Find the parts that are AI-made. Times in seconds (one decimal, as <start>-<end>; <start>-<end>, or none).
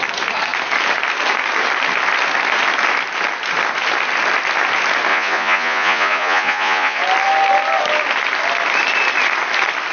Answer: 5.1-7.0